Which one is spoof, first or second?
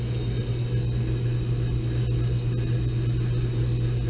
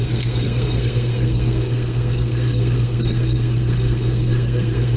second